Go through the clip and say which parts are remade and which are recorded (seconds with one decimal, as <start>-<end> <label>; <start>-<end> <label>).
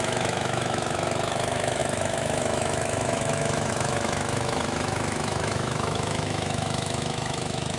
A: 0.0-7.8 remade